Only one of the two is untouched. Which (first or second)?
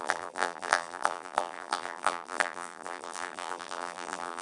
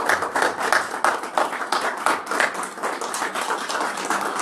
second